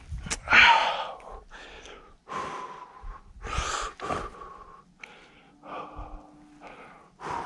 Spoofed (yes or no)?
no